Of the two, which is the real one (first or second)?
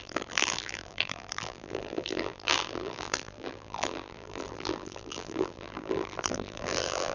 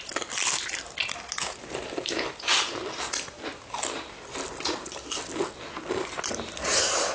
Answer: second